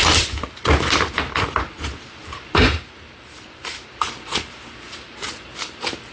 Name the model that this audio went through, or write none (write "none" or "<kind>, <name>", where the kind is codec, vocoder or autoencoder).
vocoder, BigVGAN v2